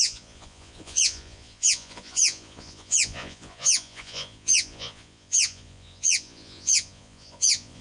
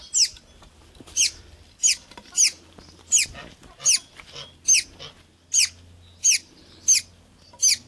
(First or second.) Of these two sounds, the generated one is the first